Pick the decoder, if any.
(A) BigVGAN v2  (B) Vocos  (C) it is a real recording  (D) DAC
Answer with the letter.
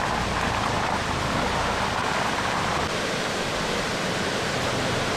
A